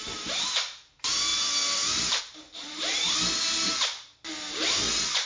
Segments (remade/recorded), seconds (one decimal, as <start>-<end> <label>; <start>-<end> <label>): 0.0-1.3 recorded; 1.3-2.2 remade; 2.2-5.3 recorded